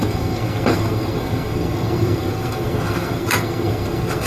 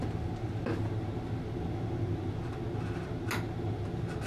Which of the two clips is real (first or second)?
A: second